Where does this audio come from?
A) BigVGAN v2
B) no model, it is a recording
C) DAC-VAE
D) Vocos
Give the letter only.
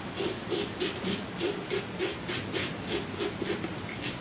B